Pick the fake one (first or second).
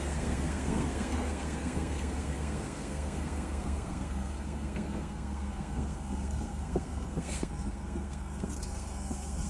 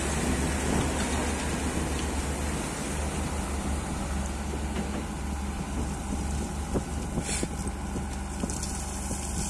first